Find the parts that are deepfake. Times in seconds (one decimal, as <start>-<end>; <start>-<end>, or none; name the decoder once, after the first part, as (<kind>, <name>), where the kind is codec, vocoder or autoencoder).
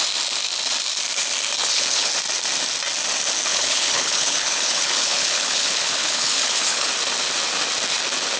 1.6-2.1 (codec, HILCodec); 3.5-6.9